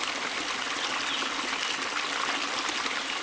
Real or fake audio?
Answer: real